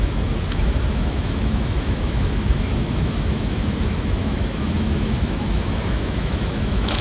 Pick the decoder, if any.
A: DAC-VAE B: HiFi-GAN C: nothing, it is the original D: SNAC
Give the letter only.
A